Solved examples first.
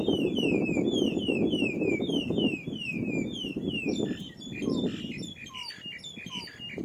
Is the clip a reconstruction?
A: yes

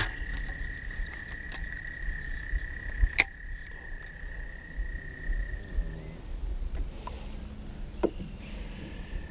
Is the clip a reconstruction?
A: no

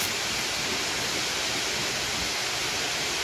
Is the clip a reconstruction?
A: no